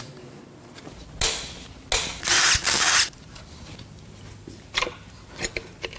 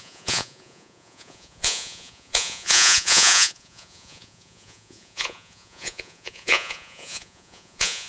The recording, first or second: first